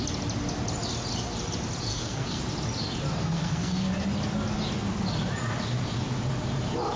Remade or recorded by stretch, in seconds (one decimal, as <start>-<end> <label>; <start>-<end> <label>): 0.0-1.9 recorded; 1.9-2.4 remade; 2.4-3.2 recorded; 3.2-3.9 remade; 3.9-7.0 recorded

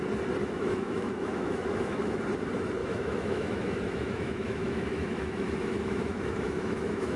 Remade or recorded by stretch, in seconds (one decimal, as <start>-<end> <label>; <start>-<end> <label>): 0.0-0.4 recorded; 0.4-2.2 remade; 2.2-2.8 recorded; 2.8-7.2 remade

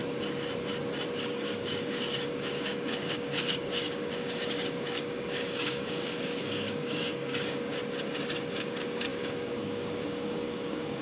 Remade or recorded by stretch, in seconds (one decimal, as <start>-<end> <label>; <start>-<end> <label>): 0.0-1.2 recorded; 1.2-7.8 remade; 7.8-8.5 recorded; 8.5-11.0 remade

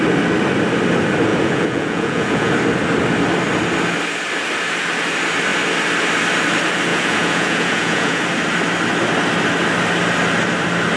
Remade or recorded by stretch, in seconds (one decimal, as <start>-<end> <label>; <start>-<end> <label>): 0.0-1.3 recorded; 1.3-2.5 remade; 2.5-6.9 recorded; 6.9-8.2 remade; 8.2-11.0 recorded

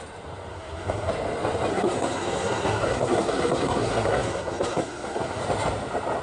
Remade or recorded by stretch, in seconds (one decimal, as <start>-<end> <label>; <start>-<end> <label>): 0.0-0.5 recorded; 0.5-1.1 remade; 1.1-1.7 recorded; 1.7-5.4 remade; 5.4-6.2 recorded

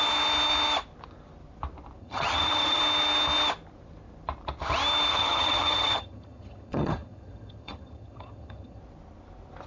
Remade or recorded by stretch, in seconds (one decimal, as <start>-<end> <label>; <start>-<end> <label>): 0.0-2.0 recorded; 2.0-2.8 remade; 2.8-5.1 recorded; 5.1-8.8 remade; 8.8-9.7 recorded